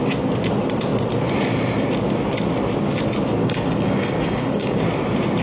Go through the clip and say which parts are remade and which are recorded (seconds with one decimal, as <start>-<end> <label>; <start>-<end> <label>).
0.0-3.4 recorded; 3.4-4.8 remade; 4.8-5.4 recorded